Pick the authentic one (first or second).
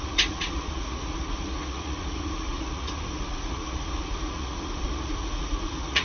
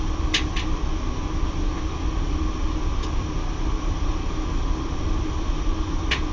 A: second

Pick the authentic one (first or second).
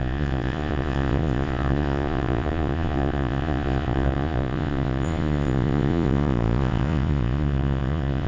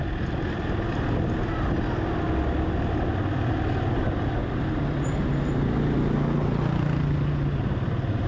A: second